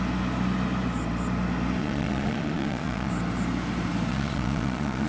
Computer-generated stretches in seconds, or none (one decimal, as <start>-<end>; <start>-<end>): 1.8-3.1; 4.1-5.1